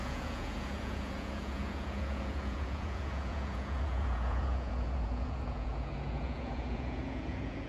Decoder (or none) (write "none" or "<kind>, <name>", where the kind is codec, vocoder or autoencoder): vocoder, Vocos